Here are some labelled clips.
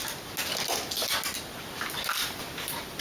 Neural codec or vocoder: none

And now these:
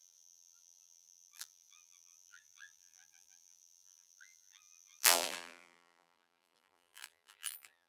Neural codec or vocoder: vocoder, BigVGAN v2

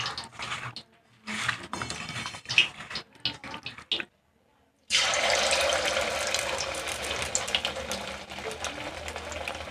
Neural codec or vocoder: none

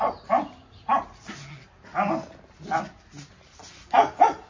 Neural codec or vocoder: none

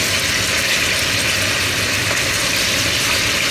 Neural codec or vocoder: none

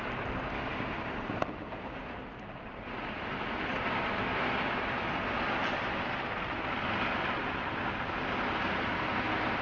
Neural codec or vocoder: none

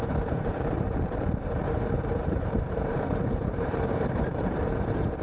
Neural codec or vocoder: vocoder, BigVGAN v2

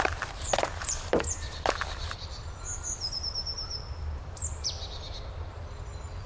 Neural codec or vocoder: vocoder, BigVGAN v2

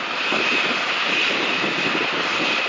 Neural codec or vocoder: none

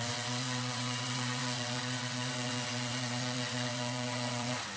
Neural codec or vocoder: vocoder, WaveNeXt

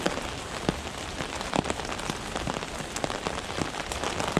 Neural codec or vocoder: none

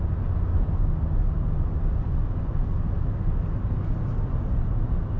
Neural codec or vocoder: none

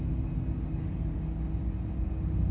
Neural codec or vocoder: none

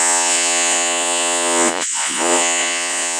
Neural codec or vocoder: vocoder, Vocos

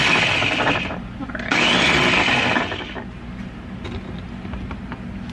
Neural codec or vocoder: none